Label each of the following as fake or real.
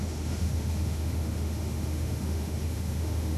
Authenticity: fake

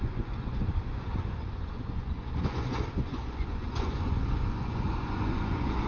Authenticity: fake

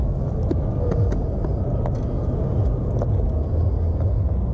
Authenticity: real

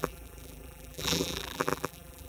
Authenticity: fake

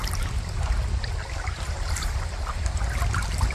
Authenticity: real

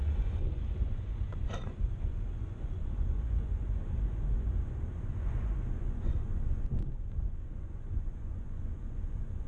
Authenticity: fake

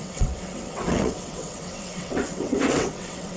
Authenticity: fake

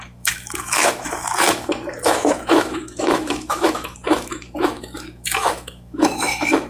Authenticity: fake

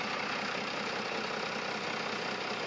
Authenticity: real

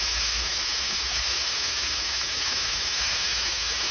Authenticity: fake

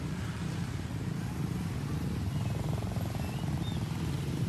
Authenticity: fake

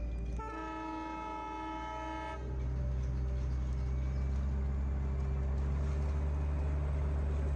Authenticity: real